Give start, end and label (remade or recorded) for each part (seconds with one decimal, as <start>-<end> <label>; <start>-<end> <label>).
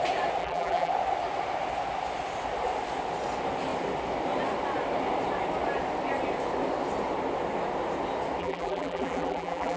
0.0-0.4 recorded; 0.4-0.9 remade; 0.9-8.4 recorded; 8.4-9.8 remade